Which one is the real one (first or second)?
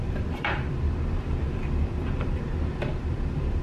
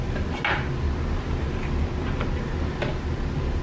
second